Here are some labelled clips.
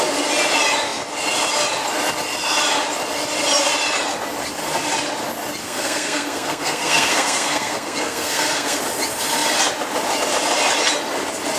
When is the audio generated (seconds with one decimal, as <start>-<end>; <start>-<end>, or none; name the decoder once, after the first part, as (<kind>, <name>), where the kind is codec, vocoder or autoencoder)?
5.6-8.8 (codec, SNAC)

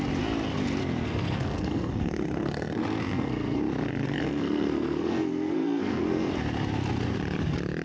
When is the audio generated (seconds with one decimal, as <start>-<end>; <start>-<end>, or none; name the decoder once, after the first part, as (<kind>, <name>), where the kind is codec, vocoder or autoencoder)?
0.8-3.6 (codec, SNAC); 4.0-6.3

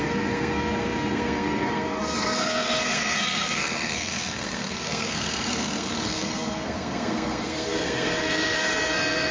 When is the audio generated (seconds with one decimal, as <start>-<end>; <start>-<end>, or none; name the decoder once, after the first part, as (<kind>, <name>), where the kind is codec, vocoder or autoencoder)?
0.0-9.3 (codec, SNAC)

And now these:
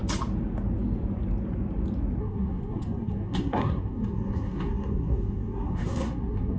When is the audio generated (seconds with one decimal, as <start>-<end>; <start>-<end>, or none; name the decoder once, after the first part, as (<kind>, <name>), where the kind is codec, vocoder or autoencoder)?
2.2-6.6 (codec, SNAC)

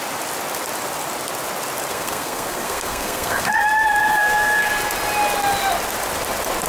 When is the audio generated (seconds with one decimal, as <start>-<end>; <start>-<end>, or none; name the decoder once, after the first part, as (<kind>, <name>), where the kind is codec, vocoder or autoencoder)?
1.9-3.5 (codec, SNAC); 4.0-4.7